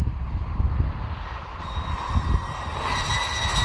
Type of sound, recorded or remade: recorded